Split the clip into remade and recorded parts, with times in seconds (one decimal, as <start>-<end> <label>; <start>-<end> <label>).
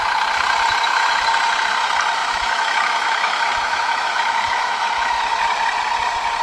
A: 0.0-2.2 recorded; 2.2-5.4 remade; 5.4-6.4 recorded